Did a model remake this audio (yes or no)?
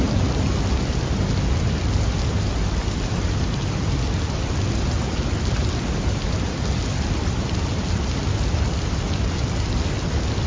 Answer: no